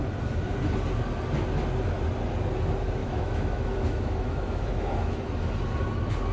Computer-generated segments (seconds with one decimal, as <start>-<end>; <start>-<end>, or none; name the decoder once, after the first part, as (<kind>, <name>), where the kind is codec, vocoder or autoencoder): 3.0-5.2 (autoencoder, DAC-VAE)